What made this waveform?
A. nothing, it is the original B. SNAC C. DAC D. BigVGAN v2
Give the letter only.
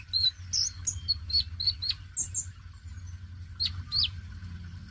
A